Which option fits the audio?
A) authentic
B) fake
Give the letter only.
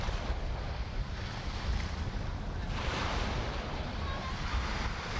A